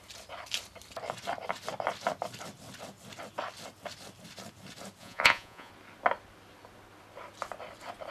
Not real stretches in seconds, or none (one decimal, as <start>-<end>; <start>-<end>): 5.0-5.7